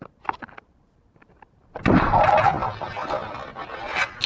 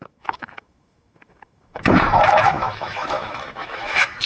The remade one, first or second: second